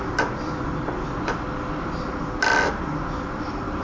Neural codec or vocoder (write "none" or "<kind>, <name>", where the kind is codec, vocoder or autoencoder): none